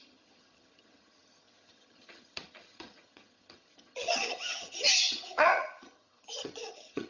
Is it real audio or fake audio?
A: fake